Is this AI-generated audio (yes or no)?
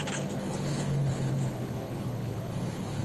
yes